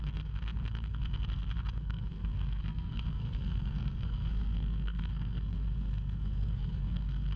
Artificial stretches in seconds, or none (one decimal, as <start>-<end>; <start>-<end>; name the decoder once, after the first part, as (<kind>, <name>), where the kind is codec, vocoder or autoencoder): 0.0-7.4 (codec, SNAC)